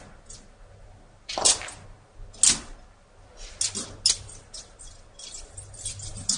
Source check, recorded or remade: recorded